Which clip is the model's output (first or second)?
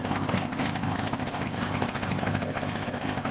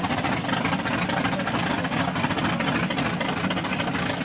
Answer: first